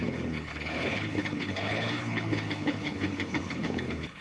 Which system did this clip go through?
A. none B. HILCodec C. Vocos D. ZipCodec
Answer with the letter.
B